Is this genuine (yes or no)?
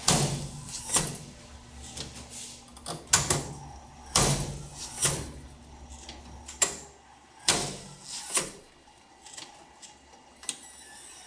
yes